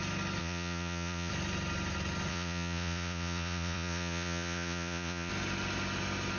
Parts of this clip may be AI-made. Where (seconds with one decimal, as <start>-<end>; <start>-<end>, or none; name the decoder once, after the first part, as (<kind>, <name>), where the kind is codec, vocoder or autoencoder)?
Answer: 0.4-1.3 (vocoder, Vocos); 2.3-5.3